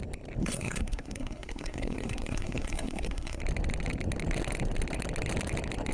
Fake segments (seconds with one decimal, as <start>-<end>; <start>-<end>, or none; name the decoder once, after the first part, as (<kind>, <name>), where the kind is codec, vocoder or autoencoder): 0.4-3.4 (codec, SNAC)